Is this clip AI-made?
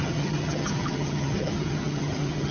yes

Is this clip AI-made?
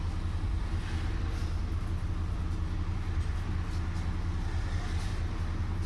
no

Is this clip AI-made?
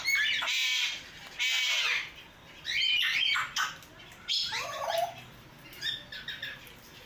no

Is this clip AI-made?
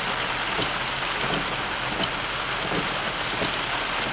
no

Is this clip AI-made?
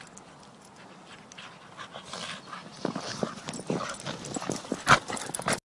no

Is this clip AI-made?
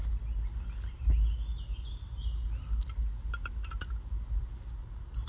no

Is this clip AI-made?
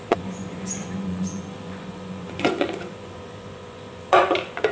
yes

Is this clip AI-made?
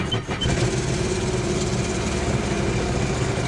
no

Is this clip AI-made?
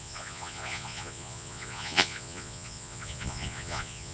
yes